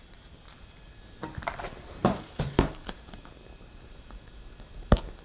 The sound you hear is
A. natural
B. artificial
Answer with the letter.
B